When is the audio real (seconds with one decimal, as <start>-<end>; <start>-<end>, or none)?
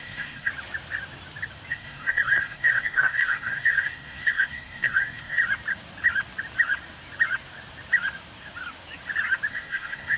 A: 0.5-1.7; 5.4-9.5